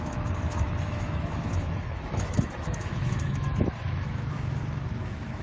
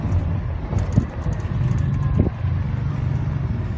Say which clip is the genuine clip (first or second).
second